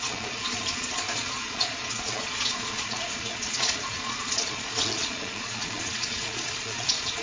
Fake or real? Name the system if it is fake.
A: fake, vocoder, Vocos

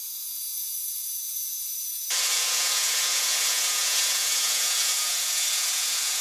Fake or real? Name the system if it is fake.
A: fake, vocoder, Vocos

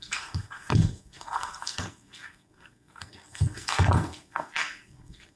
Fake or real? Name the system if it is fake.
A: fake, codec, SNAC